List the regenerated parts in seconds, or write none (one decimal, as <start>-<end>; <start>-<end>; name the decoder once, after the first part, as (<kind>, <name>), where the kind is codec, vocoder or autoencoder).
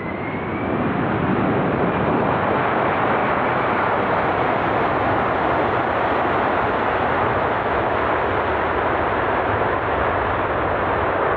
none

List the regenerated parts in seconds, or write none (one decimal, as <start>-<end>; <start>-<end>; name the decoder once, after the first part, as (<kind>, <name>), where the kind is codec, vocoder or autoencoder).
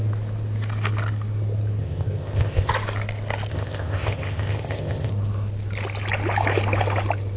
1.8-2.7 (codec, ZipCodec); 3.5-5.1